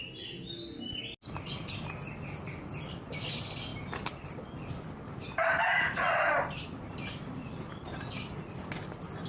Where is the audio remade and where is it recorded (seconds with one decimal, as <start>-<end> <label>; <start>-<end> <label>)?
0.0-9.3 recorded